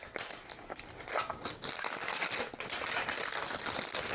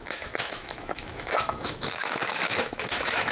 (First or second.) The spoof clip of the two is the second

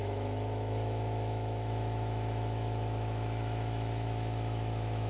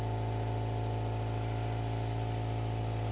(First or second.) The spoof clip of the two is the first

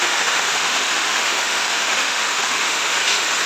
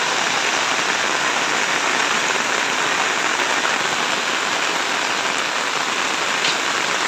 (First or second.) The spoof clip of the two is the first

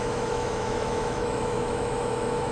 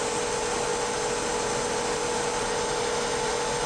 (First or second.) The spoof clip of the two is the first